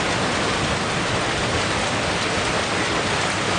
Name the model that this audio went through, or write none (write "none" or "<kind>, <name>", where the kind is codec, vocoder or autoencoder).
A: none